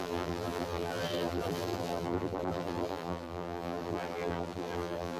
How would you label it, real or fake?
fake